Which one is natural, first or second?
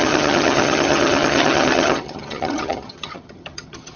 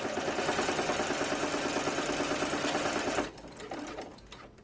second